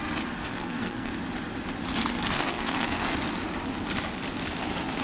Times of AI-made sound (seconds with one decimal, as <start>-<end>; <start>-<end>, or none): 0.5-1.1; 2.2-3.1